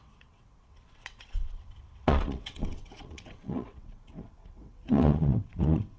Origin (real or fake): fake